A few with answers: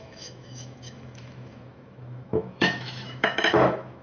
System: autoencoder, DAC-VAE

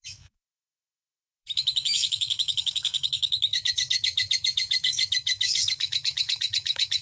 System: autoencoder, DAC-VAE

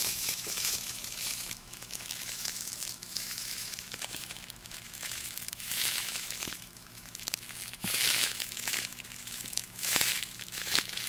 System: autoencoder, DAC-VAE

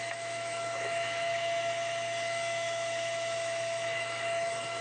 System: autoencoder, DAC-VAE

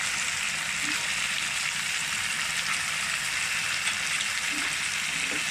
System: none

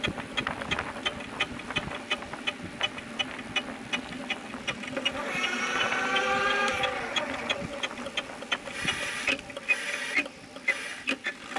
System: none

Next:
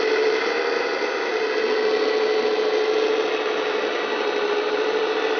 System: none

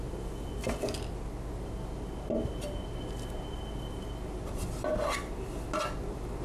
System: none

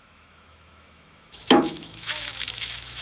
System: autoencoder, DAC-VAE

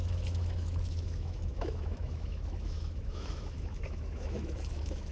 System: autoencoder, DAC-VAE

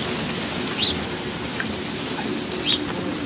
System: none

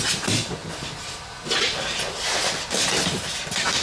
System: none